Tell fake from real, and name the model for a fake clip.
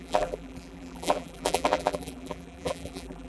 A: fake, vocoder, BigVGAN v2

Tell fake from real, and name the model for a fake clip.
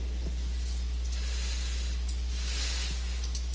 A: real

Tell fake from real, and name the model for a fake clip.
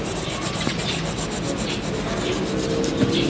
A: real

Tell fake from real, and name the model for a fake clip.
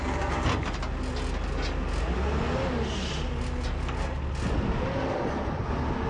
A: real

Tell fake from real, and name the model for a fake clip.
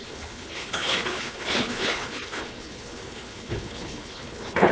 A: fake, codec, HILCodec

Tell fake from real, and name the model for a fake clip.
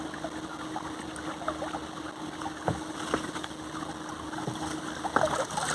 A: real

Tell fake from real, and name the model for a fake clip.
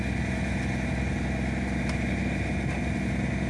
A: real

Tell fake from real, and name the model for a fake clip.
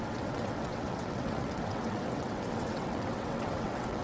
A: fake, vocoder, WaveNeXt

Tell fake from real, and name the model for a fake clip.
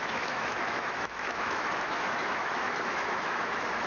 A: fake, autoencoder, DAC-VAE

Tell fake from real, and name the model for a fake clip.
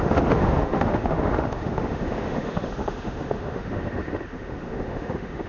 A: fake, autoencoder, DAC-VAE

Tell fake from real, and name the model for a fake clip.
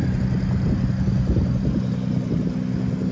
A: real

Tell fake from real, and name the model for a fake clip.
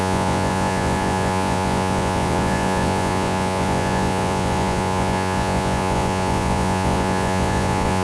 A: fake, vocoder, Vocos